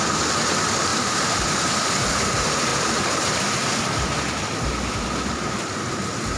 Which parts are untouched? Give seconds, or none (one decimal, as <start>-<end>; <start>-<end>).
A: 0.0-0.9; 1.4-2.7; 3.5-6.4